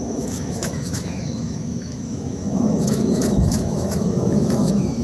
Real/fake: fake